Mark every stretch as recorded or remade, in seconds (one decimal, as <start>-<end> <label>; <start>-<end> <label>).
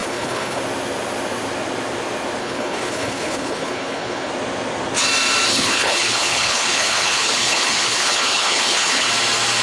0.0-0.6 remade; 0.6-2.4 recorded; 2.4-4.3 remade; 4.3-5.5 recorded; 5.5-9.1 remade; 9.1-9.6 recorded